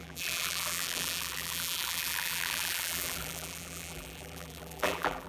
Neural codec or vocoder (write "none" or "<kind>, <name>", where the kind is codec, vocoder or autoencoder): vocoder, BigVGAN v2